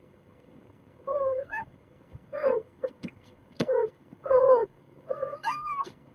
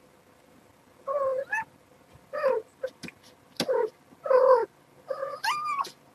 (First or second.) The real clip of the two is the second